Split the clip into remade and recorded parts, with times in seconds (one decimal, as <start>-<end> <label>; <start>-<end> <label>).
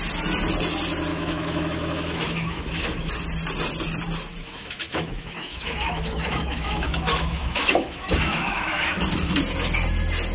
0.0-1.1 recorded; 1.1-3.1 remade; 3.1-4.4 recorded; 4.4-9.0 remade; 9.0-10.3 recorded